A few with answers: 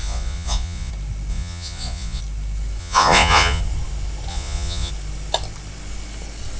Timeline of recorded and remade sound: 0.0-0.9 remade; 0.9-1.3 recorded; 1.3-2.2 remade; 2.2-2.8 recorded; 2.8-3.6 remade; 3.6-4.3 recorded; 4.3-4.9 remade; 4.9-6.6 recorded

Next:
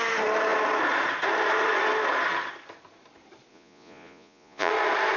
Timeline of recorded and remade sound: 0.0-3.5 recorded; 3.5-4.7 remade; 4.7-5.2 recorded

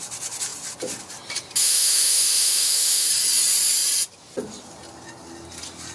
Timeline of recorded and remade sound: 0.0-1.6 recorded; 1.6-3.1 remade; 3.1-5.9 recorded

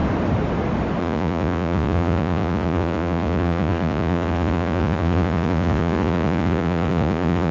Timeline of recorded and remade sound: 0.0-1.0 recorded; 1.0-7.5 remade

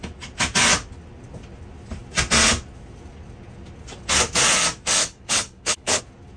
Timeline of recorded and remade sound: 0.0-5.0 recorded; 5.0-6.0 remade; 6.0-6.4 recorded

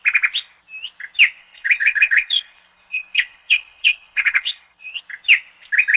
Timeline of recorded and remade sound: 0.0-1.4 recorded; 1.4-5.0 remade; 5.0-6.0 recorded